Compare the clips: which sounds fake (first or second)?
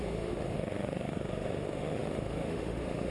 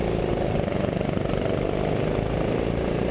first